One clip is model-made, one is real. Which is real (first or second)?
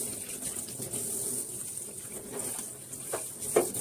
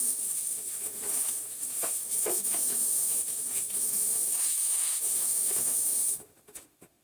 first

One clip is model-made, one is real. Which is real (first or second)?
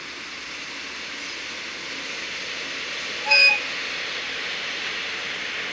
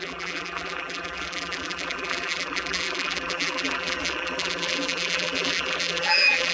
first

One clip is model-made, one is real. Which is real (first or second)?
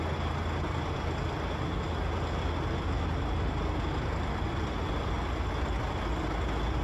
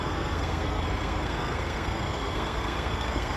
first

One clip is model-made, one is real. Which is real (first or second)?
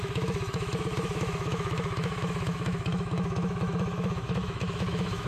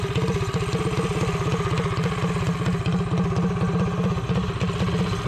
second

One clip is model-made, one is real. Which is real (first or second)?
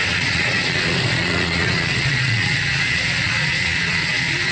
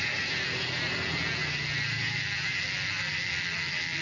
second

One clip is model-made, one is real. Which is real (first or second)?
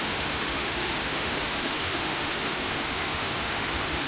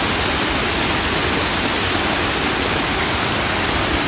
second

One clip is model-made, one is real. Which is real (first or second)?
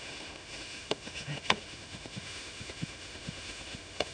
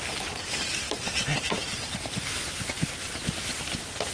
second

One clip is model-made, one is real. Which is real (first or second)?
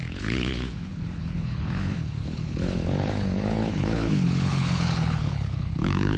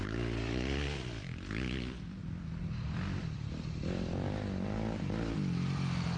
second